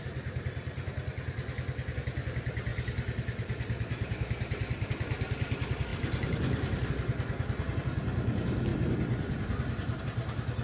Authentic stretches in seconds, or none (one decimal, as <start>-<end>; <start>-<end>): 0.0-5.9; 6.9-8.7; 10.0-10.6